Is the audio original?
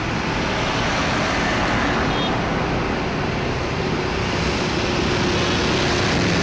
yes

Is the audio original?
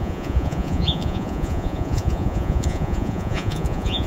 no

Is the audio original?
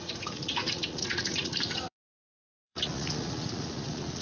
no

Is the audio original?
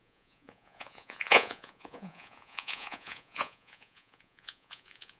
no